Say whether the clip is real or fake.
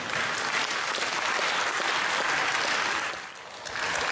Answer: real